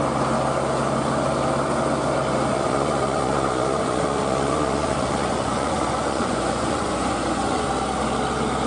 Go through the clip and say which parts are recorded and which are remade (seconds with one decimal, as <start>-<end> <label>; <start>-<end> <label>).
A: 0.0-2.5 recorded; 2.5-7.7 remade; 7.7-8.7 recorded